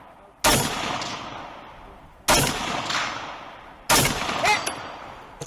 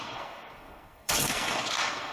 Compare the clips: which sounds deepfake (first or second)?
second